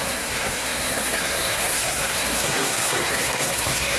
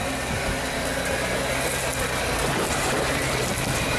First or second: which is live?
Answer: second